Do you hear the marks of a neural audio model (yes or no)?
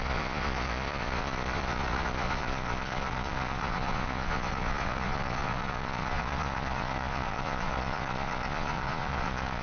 yes